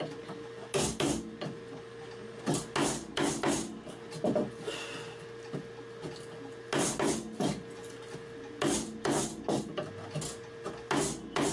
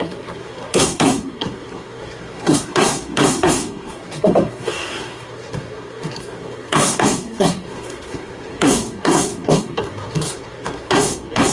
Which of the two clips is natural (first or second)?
first